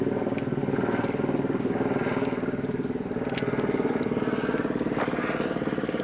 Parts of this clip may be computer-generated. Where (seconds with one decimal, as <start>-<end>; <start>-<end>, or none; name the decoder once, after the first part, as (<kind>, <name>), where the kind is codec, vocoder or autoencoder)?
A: none